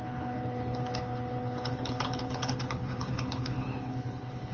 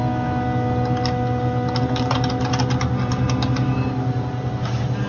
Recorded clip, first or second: second